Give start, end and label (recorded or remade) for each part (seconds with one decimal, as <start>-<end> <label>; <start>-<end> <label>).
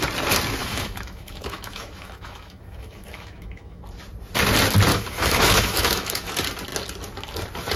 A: 0.0-0.6 recorded; 0.6-3.8 remade; 3.8-4.9 recorded; 4.9-6.3 remade; 6.3-7.8 recorded